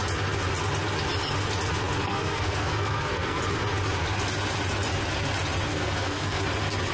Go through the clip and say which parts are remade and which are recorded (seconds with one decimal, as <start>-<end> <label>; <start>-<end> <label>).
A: 0.0-2.1 recorded; 2.1-3.4 remade; 3.4-5.7 recorded; 5.7-6.4 remade; 6.4-6.9 recorded

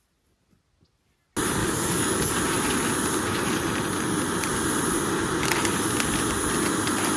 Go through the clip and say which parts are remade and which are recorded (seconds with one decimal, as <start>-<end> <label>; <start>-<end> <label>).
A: 0.0-1.6 recorded; 1.6-2.3 remade; 2.3-7.2 recorded